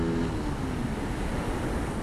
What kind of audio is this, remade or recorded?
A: recorded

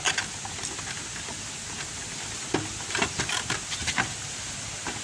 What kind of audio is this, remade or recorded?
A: recorded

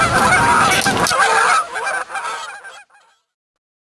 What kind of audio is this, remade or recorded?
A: recorded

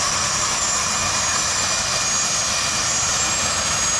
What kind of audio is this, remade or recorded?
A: recorded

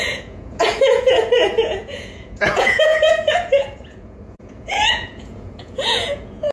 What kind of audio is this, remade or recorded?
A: remade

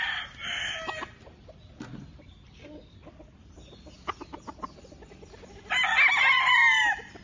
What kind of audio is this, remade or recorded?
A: recorded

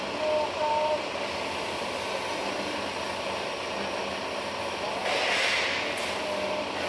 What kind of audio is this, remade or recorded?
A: recorded